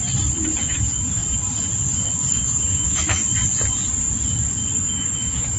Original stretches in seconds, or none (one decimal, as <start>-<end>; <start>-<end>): 0.0-0.6; 1.2-2.3; 3.2-4.8